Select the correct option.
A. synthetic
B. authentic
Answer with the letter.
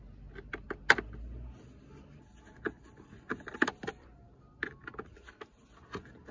B